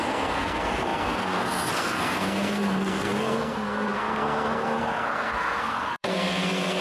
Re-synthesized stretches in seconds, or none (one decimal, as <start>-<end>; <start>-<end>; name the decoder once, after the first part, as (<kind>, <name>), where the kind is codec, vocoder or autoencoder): 0.0-6.8 (codec, SNAC)